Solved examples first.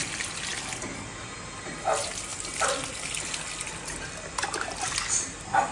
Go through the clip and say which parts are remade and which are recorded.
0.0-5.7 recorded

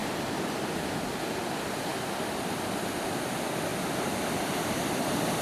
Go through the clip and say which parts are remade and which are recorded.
0.0-0.8 remade; 0.8-3.7 recorded; 3.7-4.7 remade; 4.7-5.4 recorded